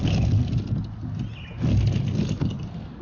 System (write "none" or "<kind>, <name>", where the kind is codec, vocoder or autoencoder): none